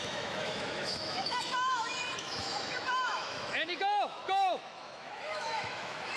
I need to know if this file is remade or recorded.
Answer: remade